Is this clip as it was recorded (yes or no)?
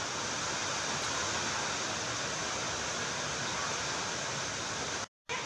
yes